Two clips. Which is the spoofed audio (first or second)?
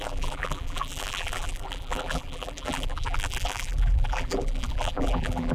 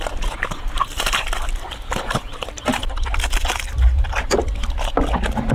first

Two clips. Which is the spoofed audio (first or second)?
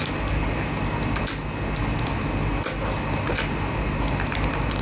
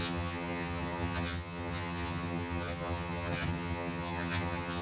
second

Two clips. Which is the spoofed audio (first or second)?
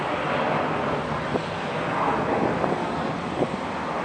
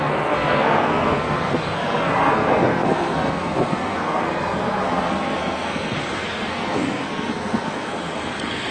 second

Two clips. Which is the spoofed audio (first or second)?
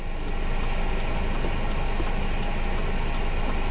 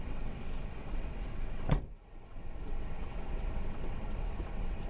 second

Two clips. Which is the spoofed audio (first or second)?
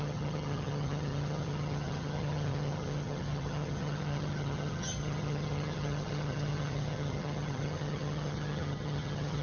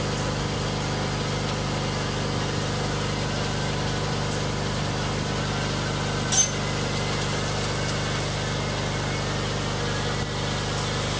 first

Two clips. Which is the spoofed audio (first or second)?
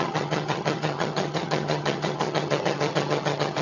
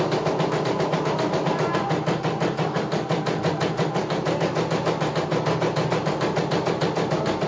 first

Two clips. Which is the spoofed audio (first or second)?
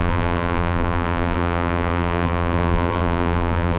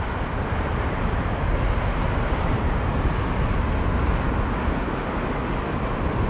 first